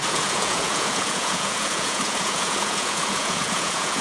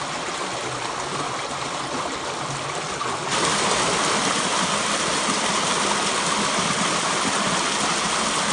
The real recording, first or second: second